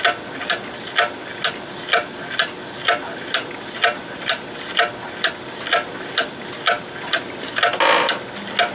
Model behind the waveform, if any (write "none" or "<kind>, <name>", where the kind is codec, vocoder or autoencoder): none